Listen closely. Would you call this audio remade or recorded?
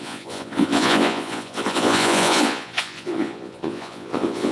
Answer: remade